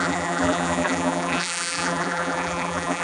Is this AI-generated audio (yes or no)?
yes